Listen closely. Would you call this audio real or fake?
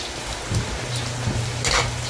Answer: real